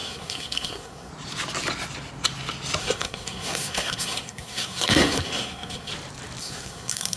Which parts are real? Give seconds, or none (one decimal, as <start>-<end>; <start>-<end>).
1.1-2.8; 5.9-6.4